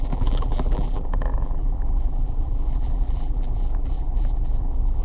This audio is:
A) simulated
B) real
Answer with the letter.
A